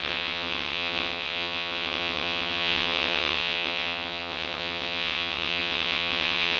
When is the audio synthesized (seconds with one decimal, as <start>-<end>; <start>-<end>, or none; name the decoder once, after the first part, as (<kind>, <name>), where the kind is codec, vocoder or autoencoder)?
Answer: 0.0-6.6 (vocoder, WaveNeXt)